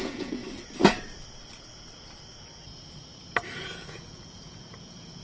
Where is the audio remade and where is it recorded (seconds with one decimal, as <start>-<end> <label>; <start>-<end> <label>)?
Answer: 0.0-0.4 remade; 0.4-3.5 recorded; 3.5-5.2 remade